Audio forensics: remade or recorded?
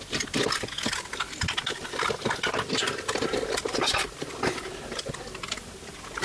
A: recorded